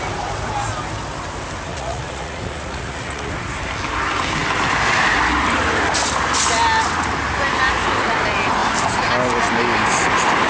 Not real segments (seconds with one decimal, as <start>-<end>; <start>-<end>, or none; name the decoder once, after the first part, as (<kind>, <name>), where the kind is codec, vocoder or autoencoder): 1.7-3.3 (vocoder, Vocos)